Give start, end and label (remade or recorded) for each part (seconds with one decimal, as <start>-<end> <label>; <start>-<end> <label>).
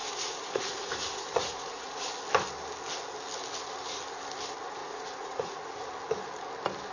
0.0-2.1 remade; 2.1-4.8 recorded; 4.8-5.6 remade; 5.6-6.9 recorded